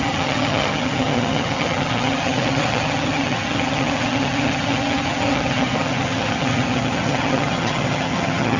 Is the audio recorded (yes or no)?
no